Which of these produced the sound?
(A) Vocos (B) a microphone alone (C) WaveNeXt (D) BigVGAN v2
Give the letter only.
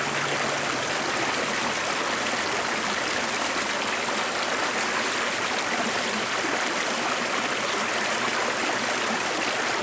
B